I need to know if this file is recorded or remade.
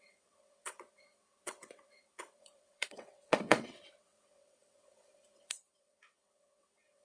remade